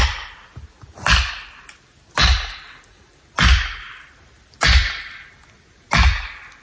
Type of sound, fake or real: real